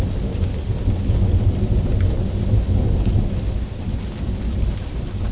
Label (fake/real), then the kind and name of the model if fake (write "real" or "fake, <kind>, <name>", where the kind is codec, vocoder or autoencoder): real